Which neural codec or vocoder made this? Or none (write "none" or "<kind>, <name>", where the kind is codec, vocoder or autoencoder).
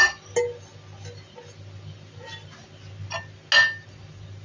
none